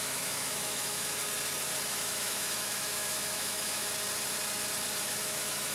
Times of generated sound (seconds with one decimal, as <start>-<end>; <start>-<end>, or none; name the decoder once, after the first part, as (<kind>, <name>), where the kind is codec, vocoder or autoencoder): 0.0-1.2 (autoencoder, DAC-VAE); 1.9-3.9; 5.2-5.7